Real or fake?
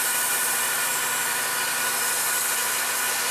real